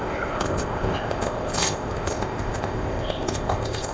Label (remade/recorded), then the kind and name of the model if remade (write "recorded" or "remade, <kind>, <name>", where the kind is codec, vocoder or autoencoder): remade, codec, ZipCodec